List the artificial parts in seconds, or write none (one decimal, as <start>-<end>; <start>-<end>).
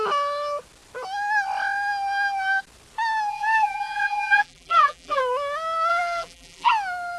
3.3-5.2; 5.9-6.7